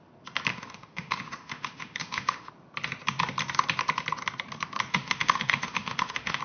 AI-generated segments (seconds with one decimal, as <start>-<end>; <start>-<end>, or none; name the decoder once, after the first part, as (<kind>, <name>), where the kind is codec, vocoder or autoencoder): 0.5-2.5 (autoencoder, DAC-VAE); 4.9-6.4